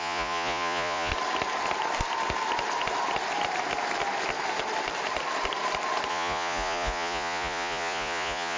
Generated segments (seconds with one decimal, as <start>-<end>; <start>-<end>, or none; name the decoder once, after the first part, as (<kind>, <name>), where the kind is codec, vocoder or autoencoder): 0.0-1.1 (vocoder, Vocos); 6.1-8.6